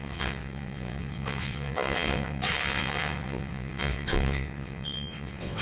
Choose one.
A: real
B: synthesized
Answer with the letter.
B